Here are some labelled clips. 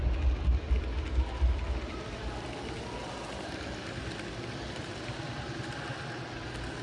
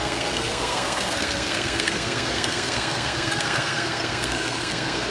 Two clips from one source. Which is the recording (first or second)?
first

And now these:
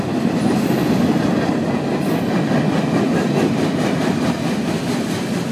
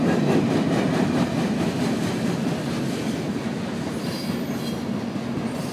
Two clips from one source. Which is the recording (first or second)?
second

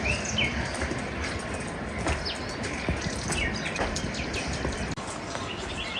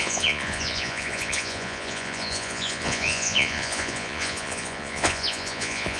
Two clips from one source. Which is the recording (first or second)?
first